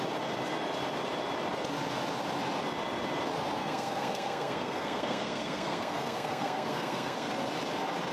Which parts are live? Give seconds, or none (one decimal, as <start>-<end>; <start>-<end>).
0.0-3.6; 7.3-8.1